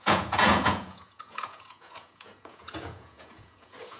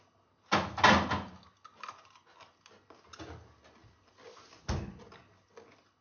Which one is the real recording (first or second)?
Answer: second